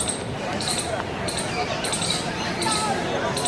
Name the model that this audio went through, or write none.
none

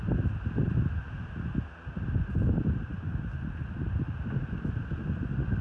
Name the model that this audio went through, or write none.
none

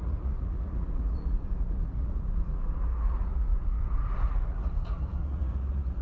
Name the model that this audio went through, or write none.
vocoder, Vocos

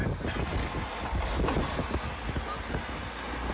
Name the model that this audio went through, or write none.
none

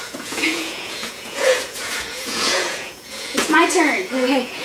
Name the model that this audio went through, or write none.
vocoder, Vocos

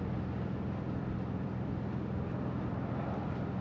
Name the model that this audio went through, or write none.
none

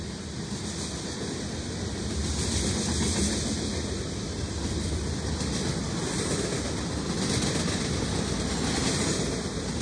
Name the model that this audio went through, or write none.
none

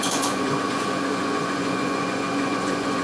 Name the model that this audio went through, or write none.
vocoder, Vocos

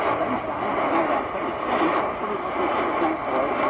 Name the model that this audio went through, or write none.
none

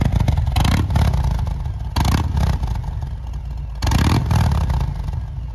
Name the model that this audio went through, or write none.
none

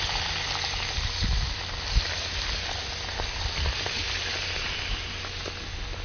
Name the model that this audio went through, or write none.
none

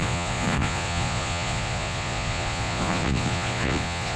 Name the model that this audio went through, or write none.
vocoder, Vocos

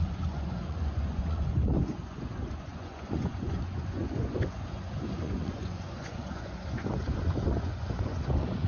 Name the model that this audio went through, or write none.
vocoder, Vocos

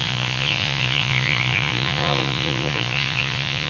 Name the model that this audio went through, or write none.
vocoder, Vocos